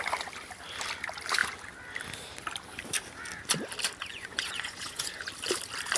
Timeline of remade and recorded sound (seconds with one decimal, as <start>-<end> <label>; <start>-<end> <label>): 0.0-4.1 recorded; 4.1-5.2 remade; 5.2-6.0 recorded